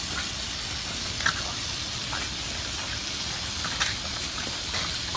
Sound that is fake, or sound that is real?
real